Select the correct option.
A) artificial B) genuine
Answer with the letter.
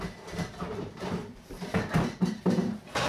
A